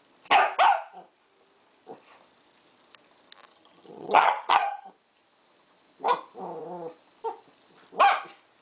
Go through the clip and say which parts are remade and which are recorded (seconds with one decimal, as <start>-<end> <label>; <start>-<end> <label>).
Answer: 0.0-3.5 recorded; 3.5-4.9 remade; 4.9-8.6 recorded